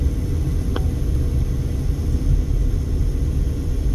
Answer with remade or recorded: recorded